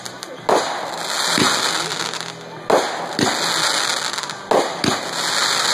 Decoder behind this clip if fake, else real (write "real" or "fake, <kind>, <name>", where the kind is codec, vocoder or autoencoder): real